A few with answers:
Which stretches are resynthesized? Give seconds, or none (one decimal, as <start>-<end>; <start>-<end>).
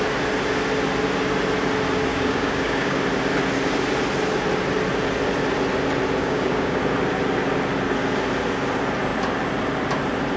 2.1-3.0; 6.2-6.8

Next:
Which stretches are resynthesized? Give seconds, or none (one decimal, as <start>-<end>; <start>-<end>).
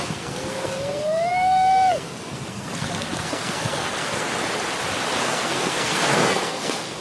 0.0-4.3; 5.2-7.0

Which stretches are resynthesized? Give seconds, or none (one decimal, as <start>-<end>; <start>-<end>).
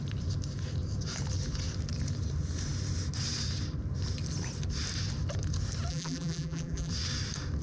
5.9-6.9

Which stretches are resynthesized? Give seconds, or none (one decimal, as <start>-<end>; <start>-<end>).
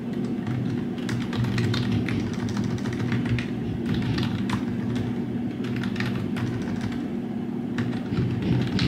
3.6-4.6